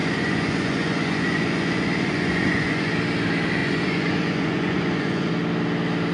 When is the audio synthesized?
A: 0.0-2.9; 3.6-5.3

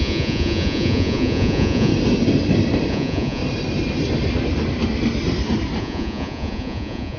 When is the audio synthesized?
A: 0.0-1.9; 2.9-3.4; 5.8-7.2

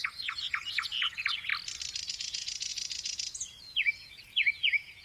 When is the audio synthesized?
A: 0.0-1.5; 2.1-5.0

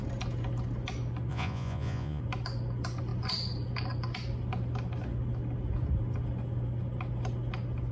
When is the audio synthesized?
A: 1.3-2.2

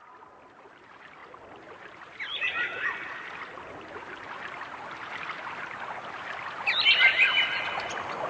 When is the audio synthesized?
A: none